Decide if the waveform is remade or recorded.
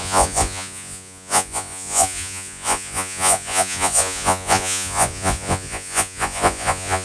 remade